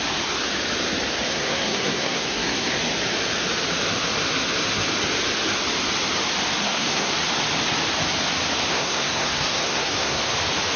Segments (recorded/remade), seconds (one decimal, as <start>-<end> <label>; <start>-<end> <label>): 0.0-1.3 recorded; 1.3-2.8 remade; 2.8-6.6 recorded; 6.6-7.1 remade; 7.1-8.7 recorded; 8.7-10.2 remade; 10.2-10.8 recorded